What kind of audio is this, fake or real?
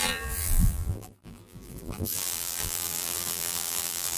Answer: fake